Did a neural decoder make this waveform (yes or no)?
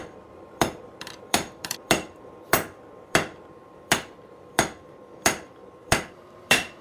yes